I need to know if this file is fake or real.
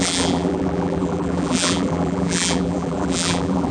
fake